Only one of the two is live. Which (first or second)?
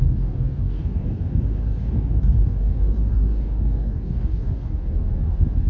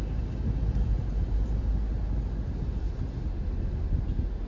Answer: second